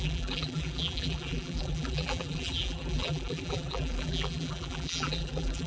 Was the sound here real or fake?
fake